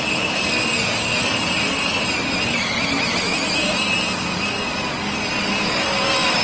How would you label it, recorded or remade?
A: recorded